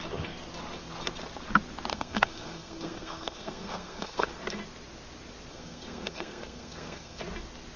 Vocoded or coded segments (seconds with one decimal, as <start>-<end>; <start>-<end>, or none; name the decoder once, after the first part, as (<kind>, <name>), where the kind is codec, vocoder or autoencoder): 1.9-4.4 (codec, SNAC); 5.5-7.2